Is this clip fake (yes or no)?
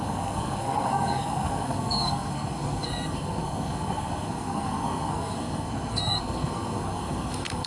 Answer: yes